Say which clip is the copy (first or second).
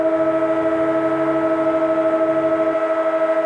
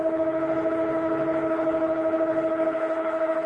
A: second